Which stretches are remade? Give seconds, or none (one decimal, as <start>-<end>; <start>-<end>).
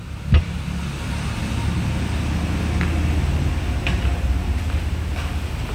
none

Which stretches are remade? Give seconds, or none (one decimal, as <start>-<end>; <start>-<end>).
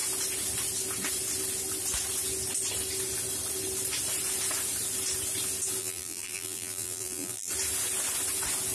5.8-7.5